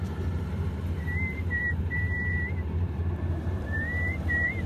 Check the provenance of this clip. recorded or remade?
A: remade